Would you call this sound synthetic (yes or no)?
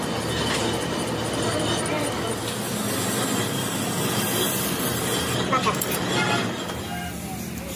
no